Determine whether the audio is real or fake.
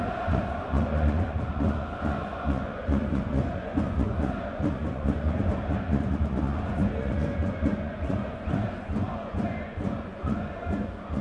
fake